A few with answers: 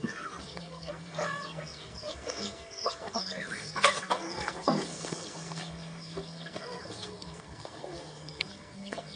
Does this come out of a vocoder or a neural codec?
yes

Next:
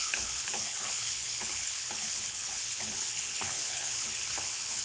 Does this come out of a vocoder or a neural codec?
yes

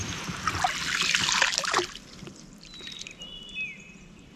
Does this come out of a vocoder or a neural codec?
no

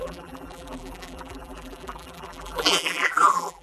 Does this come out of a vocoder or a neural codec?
yes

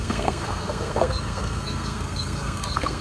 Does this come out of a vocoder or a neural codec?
yes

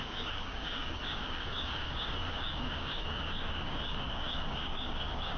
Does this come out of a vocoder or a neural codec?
yes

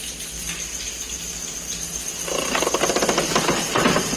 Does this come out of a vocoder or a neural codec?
no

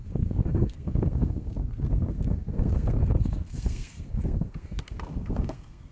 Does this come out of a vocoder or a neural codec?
yes